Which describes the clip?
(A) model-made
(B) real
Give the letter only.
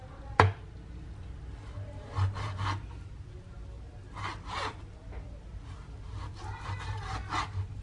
B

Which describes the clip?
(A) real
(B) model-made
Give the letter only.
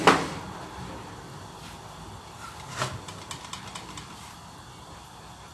A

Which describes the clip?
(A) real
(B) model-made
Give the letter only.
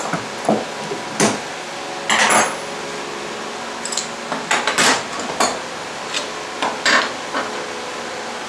A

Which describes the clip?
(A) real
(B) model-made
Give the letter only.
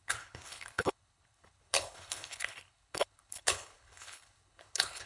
B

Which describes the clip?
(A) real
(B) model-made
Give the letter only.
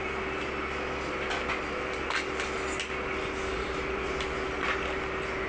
A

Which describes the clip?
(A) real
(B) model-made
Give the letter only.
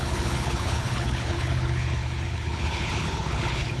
B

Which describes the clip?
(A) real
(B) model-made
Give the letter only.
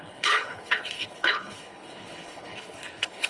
B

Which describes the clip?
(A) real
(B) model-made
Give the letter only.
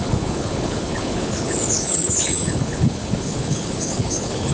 B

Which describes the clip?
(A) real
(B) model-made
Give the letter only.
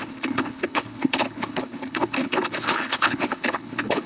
B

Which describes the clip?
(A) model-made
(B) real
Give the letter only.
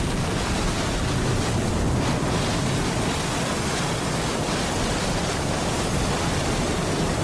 B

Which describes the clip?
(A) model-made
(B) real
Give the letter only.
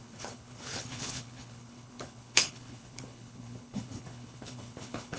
A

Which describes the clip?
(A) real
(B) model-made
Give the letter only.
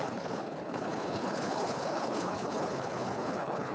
B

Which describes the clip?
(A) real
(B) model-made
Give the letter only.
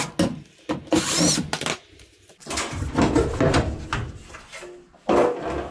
A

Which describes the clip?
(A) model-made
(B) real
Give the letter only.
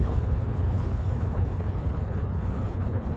A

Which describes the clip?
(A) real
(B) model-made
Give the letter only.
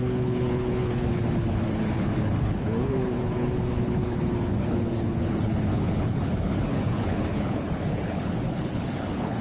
B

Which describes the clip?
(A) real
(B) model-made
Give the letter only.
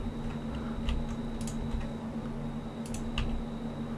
A